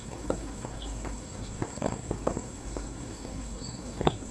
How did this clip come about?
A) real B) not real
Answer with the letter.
B